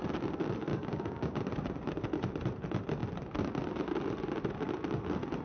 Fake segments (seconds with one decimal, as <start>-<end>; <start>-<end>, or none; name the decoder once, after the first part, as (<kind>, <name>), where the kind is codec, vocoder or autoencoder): 0.7-1.4 (codec, DAC)